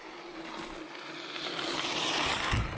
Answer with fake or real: real